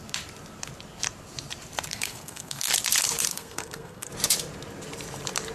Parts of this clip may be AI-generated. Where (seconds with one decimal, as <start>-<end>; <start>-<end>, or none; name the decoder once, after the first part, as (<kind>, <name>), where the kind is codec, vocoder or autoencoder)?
1.9-2.7 (codec, SNAC); 3.3-4.1